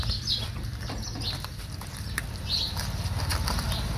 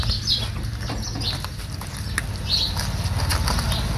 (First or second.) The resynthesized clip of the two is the first